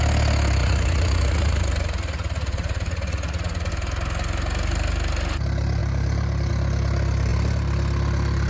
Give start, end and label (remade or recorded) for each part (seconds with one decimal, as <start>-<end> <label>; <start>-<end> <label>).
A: 0.0-0.6 recorded; 0.6-3.7 remade; 3.7-8.5 recorded